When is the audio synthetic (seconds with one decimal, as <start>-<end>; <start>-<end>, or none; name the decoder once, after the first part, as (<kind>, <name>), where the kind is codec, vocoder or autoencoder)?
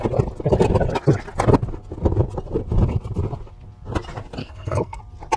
4.4-5.0 (codec, SNAC)